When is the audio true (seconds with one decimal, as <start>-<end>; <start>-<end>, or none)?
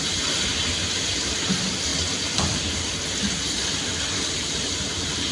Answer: 1.9-4.3